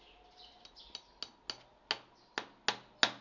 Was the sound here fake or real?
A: real